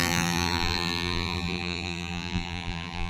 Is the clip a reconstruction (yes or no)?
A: yes